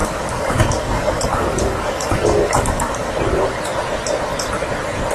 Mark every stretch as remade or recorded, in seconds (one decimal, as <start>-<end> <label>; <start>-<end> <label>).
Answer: 0.0-3.1 remade; 3.1-5.1 recorded